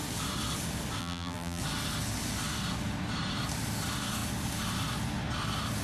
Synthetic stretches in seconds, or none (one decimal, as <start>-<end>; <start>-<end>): 1.0-1.6